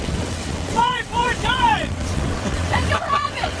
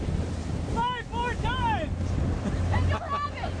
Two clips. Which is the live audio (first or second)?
second